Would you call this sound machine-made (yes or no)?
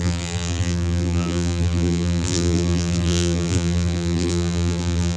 yes